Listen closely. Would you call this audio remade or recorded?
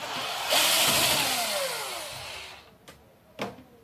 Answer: recorded